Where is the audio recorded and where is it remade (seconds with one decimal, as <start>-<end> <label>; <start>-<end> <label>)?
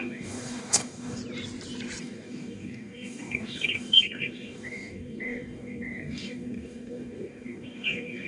0.0-1.2 remade; 1.2-2.0 recorded; 2.0-8.3 remade